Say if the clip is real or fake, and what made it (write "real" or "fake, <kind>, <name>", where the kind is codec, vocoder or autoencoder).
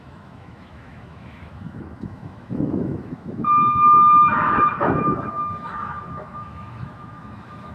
fake, autoencoder, DAC-VAE